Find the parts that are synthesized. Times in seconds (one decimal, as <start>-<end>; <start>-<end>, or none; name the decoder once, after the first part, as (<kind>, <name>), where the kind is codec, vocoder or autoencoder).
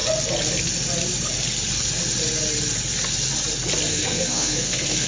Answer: 3.9-5.1 (codec, SNAC)